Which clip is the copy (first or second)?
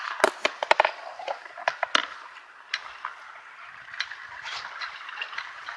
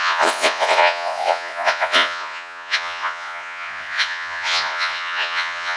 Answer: second